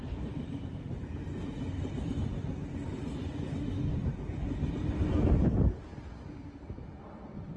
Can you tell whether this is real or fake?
real